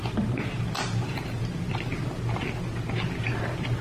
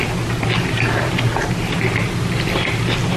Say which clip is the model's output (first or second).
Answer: first